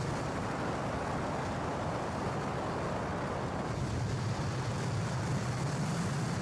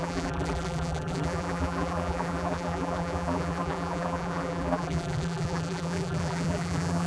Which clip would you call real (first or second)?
first